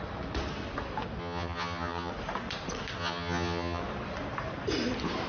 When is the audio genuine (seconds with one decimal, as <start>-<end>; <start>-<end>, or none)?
0.0-1.2; 2.1-3.0; 3.8-5.3

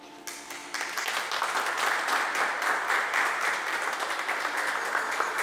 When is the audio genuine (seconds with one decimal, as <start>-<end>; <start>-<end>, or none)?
0.0-5.4

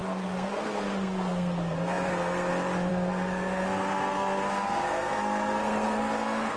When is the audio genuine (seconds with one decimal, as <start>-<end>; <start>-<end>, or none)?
2.5-2.9